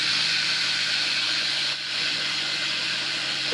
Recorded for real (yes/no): no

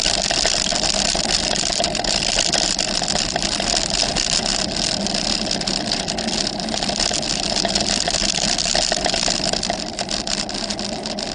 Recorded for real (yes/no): yes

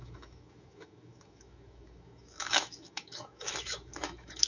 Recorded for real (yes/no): no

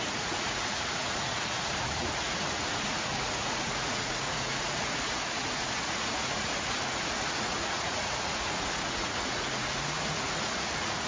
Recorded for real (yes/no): no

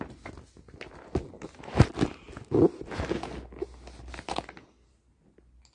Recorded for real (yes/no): yes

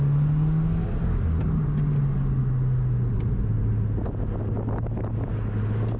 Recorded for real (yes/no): yes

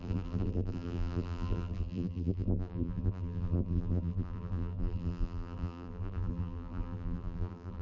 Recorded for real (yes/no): no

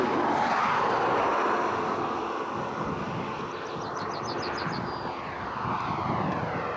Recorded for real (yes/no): yes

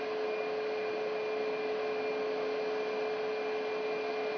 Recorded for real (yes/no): yes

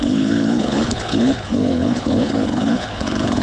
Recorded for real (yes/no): no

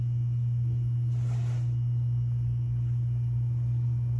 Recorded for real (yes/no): yes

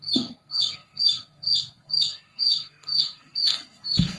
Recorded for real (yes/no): no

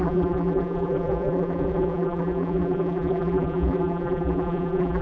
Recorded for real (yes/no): no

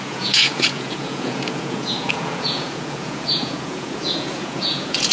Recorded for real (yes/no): no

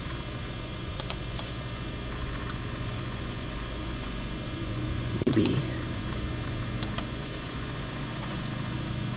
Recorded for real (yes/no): no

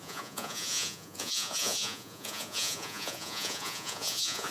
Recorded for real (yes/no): no